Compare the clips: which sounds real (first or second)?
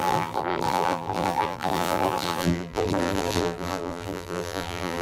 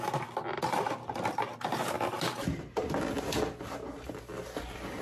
second